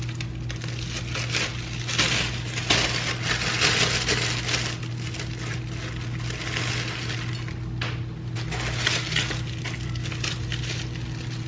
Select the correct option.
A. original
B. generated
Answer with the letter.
A